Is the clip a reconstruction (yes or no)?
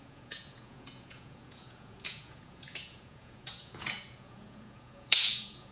yes